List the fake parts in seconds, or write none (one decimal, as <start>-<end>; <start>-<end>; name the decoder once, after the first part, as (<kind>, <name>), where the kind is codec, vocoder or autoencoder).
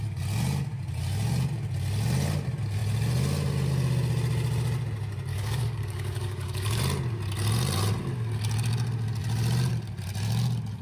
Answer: 5.3-6.8 (codec, DAC)